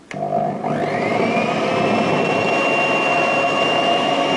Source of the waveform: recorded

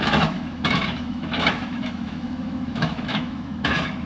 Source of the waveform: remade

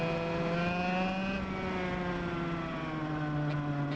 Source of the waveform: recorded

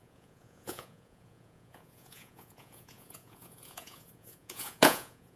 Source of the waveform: remade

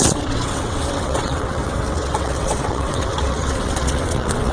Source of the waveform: remade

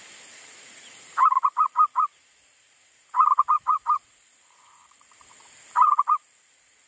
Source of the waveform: remade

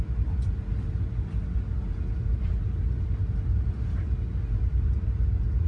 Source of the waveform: recorded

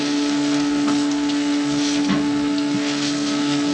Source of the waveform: remade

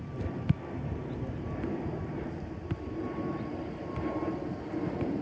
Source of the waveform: recorded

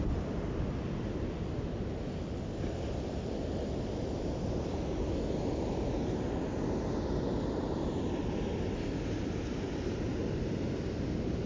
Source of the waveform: recorded